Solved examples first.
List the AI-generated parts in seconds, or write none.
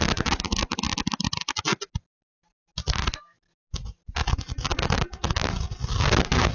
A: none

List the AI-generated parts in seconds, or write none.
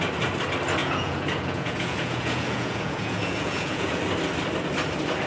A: 0.8-4.0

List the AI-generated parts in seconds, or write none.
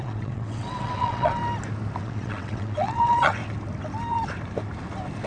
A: 0.0-1.4; 2.0-3.4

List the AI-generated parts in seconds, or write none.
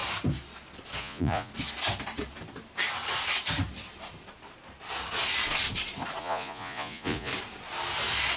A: 1.0-1.5; 6.2-7.3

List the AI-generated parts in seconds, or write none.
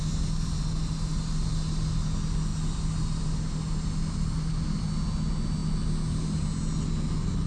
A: none